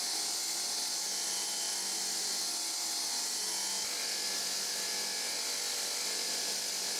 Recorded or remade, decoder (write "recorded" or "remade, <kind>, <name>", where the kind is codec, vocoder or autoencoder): recorded